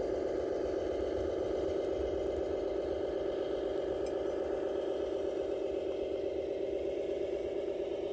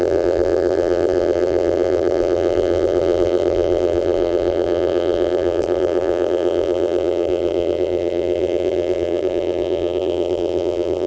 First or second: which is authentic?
first